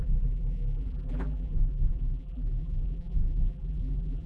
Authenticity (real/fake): fake